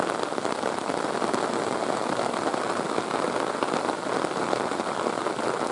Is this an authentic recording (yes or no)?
yes